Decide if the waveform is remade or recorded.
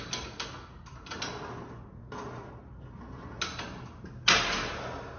recorded